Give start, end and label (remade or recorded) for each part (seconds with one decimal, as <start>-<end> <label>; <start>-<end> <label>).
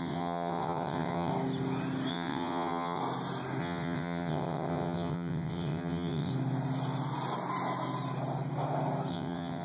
0.0-1.3 remade; 1.3-2.1 recorded; 2.1-3.0 remade; 3.0-3.6 recorded; 3.6-6.3 remade; 6.3-9.1 recorded; 9.1-9.6 remade